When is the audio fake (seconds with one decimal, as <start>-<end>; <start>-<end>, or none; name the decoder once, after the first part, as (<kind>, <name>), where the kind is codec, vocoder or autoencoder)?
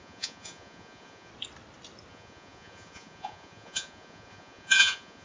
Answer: 0.0-1.3 (vocoder, Vocos); 2.1-5.2